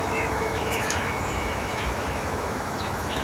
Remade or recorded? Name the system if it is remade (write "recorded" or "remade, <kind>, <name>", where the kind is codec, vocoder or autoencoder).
remade, autoencoder, DAC-VAE